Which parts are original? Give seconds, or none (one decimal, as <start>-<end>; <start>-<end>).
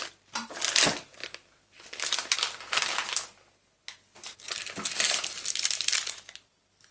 0.0-6.9